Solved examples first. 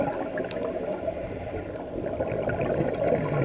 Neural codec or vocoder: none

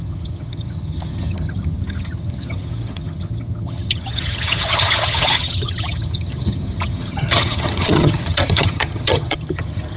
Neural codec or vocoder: vocoder, HiFi-GAN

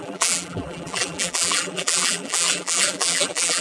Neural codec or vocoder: vocoder, BigVGAN v2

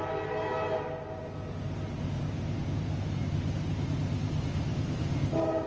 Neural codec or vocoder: none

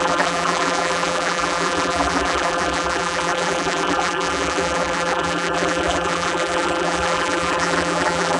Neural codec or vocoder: vocoder, BigVGAN v2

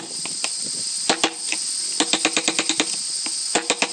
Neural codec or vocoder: none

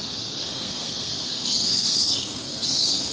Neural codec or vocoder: codec, SNAC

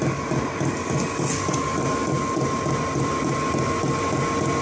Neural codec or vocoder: none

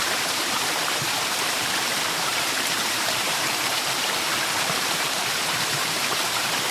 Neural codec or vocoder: vocoder, BigVGAN v2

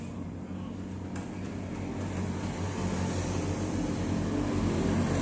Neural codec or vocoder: none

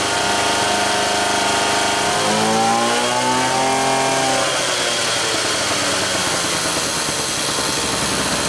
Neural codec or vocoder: none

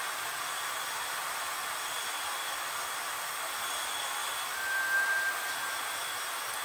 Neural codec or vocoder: none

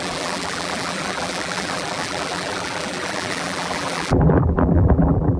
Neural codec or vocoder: vocoder, BigVGAN v2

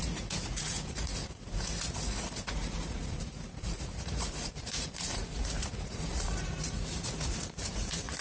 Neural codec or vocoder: vocoder, Vocos